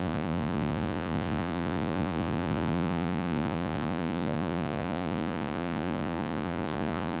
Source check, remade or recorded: remade